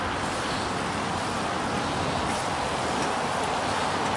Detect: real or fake real